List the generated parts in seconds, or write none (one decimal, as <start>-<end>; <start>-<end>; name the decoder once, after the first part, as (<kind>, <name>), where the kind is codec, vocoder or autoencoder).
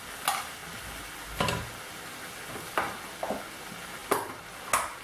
none